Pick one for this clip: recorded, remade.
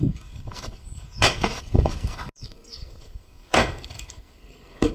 remade